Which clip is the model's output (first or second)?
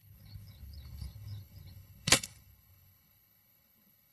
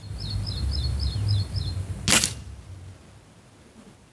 first